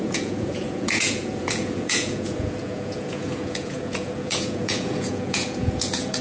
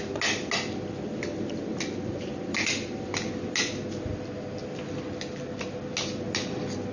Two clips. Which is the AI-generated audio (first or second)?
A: first